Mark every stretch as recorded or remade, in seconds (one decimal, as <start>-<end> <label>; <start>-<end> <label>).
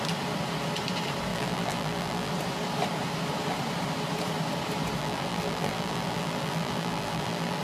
0.0-1.3 recorded; 1.3-2.3 remade; 2.3-5.0 recorded; 5.0-7.6 remade